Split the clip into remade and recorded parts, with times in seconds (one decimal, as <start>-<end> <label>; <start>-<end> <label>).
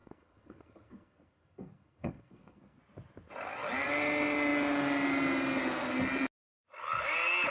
0.0-2.8 remade; 2.8-7.5 recorded